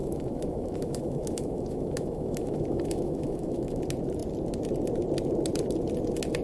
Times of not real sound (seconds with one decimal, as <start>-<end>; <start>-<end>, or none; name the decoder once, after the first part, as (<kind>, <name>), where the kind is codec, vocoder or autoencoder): 0.0-3.8 (autoencoder, DAC-VAE)